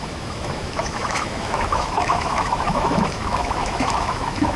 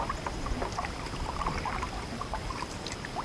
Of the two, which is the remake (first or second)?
first